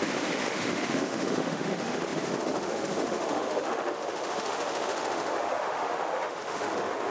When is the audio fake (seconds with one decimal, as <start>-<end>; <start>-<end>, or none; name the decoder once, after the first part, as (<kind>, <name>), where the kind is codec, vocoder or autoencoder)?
0.0-7.1 (autoencoder, DAC-VAE)